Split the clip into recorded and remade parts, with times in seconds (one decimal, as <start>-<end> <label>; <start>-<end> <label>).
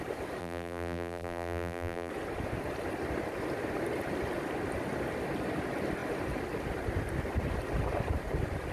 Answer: 0.0-0.4 recorded; 0.4-2.1 remade; 2.1-8.7 recorded